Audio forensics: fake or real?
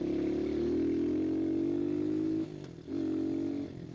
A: real